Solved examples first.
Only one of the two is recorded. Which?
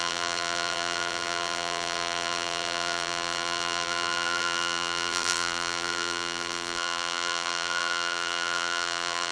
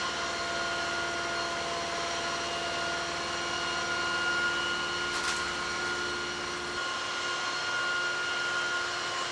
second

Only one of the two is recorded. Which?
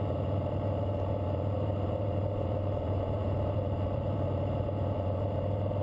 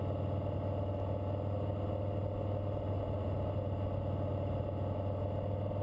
second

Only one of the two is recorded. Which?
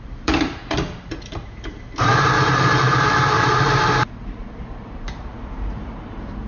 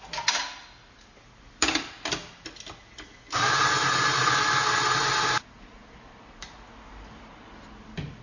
second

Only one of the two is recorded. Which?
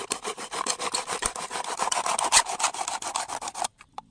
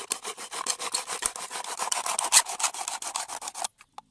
second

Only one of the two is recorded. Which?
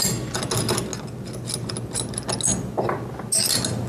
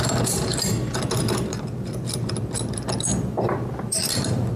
first